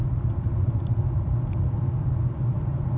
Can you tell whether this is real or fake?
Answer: real